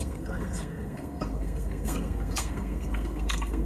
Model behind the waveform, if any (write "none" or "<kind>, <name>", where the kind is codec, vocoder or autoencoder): codec, SNAC